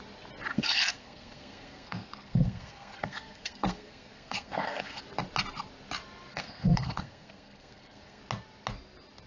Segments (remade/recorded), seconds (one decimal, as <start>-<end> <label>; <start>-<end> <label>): 0.0-0.5 recorded; 0.5-5.0 remade; 5.0-6.3 recorded; 6.3-8.2 remade; 8.2-9.3 recorded